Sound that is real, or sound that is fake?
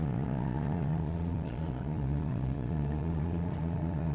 fake